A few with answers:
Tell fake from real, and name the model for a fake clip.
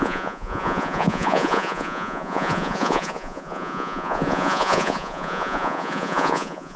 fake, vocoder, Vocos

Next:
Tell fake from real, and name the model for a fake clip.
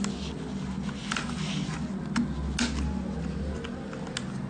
real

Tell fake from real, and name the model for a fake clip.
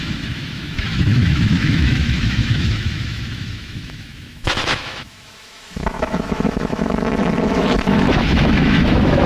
fake, autoencoder, DAC-VAE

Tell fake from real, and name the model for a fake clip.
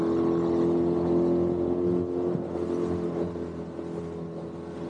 real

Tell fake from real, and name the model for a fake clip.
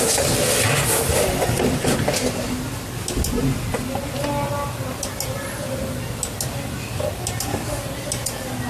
real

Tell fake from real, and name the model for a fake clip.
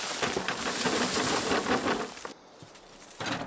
real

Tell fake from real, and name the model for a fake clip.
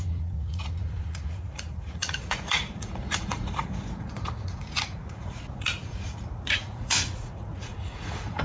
fake, vocoder, Vocos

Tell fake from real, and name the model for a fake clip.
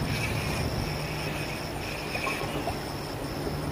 real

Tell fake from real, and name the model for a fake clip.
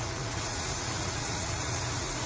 fake, vocoder, Vocos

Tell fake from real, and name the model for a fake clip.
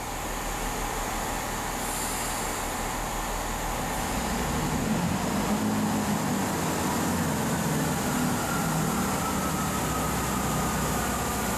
real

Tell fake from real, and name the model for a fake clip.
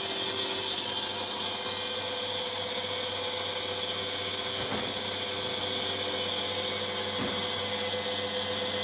real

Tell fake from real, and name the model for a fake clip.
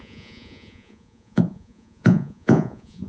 fake, vocoder, Vocos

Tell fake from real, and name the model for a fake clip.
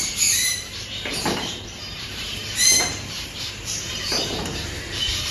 fake, vocoder, BigVGAN v2